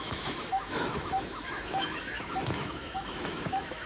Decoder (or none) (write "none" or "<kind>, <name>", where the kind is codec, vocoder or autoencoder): autoencoder, DAC-VAE